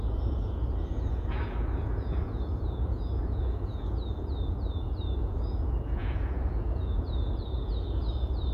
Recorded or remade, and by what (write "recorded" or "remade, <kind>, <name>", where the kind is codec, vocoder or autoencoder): remade, vocoder, Vocos